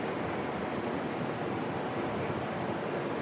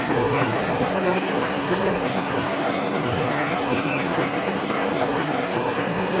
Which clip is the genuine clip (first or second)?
first